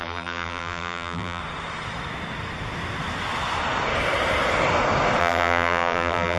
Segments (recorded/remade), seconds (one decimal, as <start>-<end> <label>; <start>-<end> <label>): 0.0-1.4 remade; 1.4-5.2 recorded; 5.2-6.4 remade